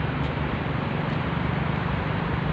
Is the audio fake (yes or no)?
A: yes